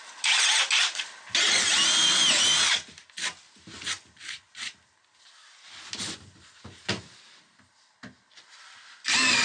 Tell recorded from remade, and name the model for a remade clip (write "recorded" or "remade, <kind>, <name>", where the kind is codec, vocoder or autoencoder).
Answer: recorded